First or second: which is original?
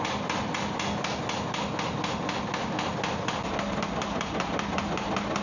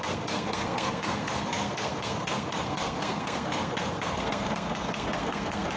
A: first